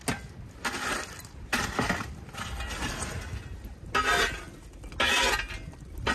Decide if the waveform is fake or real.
real